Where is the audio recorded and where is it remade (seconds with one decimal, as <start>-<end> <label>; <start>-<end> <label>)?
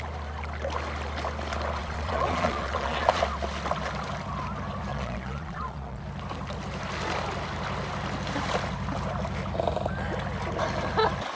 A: 0.0-1.8 recorded; 1.8-3.2 remade; 3.2-4.9 recorded; 4.9-6.0 remade; 6.0-11.3 recorded